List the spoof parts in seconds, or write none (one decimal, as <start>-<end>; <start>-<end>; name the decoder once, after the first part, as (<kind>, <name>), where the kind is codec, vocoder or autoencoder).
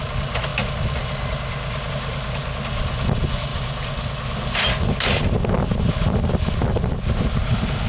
none